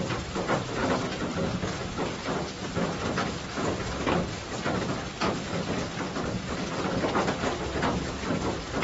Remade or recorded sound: recorded